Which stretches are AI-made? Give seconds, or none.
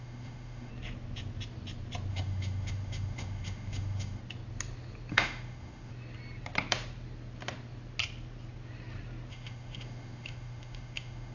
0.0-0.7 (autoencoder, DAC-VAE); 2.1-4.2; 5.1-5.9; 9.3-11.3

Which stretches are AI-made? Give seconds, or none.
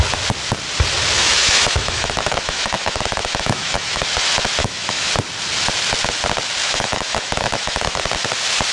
1.2-4.0 (autoencoder, DAC-VAE); 4.6-5.1; 6.6-8.0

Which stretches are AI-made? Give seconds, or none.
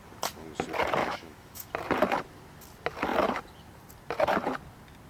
1.0-1.7 (autoencoder, DAC-VAE)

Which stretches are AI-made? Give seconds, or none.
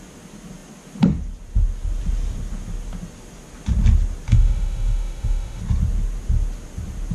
4.3-5.6 (autoencoder, DAC-VAE)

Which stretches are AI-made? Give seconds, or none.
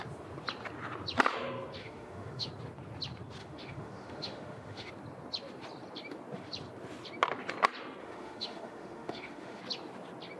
1.8-2.5 (autoencoder, DAC-VAE); 3.4-4.9; 8.0-9.6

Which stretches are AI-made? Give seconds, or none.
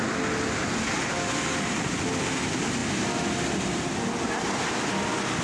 none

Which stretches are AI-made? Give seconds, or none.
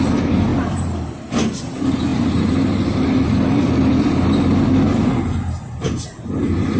none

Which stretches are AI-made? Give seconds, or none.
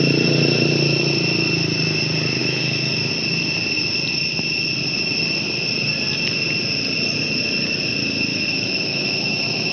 2.4-3.1 (autoencoder, DAC-VAE); 8.3-9.7